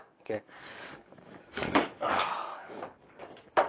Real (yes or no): no